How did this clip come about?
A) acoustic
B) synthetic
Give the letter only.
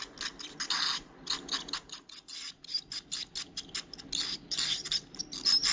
A